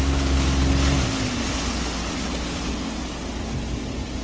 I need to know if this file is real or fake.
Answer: real